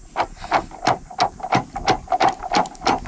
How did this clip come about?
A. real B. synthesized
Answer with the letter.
A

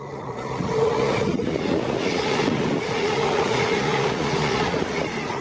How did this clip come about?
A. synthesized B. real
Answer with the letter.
A